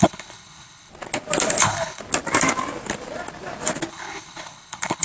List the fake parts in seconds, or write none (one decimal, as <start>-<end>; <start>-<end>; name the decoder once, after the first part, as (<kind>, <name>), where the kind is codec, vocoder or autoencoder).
0.0-0.9 (codec, HILCodec); 1.6-2.0; 3.9-5.0